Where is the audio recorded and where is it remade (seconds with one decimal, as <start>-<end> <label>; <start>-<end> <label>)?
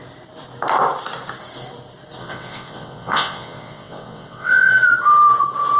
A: 0.0-2.2 recorded; 2.2-4.7 remade; 4.7-5.8 recorded